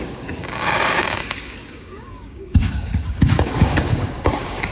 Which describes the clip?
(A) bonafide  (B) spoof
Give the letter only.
B